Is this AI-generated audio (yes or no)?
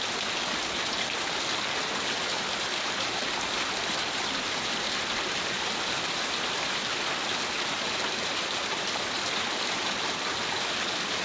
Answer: no